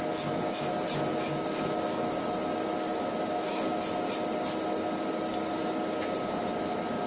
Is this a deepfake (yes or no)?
no